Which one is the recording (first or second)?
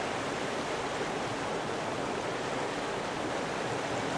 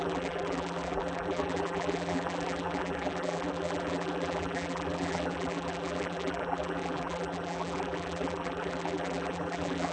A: first